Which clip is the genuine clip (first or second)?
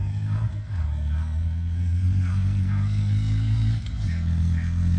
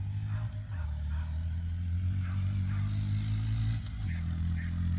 second